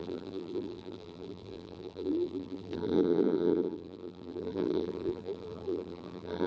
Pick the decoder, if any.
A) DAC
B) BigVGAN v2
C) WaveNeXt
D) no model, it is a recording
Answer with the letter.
B